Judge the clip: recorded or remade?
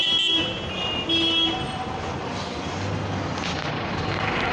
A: recorded